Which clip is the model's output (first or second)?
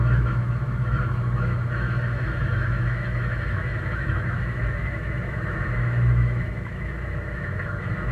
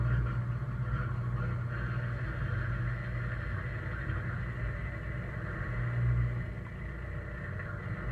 first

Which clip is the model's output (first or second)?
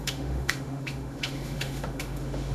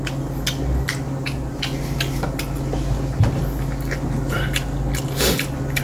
first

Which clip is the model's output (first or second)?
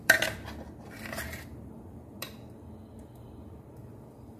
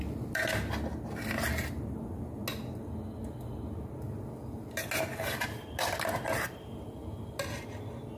first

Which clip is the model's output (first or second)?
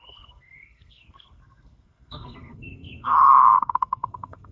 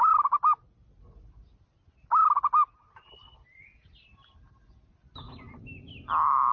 first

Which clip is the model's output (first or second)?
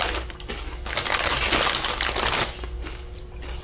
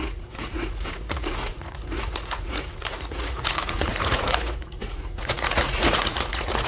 second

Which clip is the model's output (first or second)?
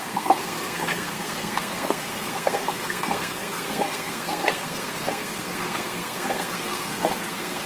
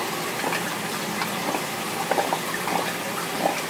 first